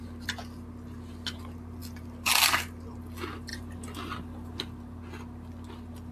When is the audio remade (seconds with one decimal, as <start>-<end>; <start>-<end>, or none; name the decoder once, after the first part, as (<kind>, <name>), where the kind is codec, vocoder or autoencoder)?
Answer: 1.8-2.6 (vocoder, BigVGAN v2); 3.5-4.6